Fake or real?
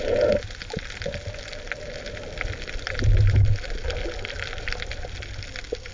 real